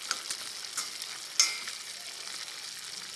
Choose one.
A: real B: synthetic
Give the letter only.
A